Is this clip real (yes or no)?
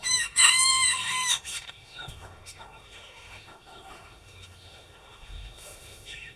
no